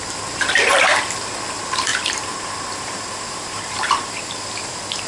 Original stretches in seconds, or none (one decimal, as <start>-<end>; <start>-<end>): 0.0-0.7; 1.3-1.9; 4.4-5.1